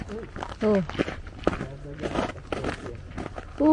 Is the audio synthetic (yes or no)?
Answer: no